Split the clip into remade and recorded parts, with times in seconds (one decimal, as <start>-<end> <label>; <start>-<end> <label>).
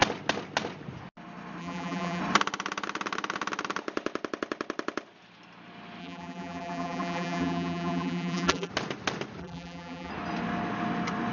0.0-1.6 recorded; 1.6-2.2 remade; 2.2-6.0 recorded; 6.0-8.7 remade; 8.7-9.4 recorded; 9.4-10.1 remade; 10.1-11.3 recorded